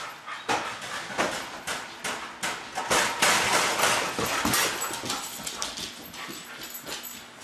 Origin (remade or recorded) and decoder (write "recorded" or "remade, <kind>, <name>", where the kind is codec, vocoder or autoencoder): recorded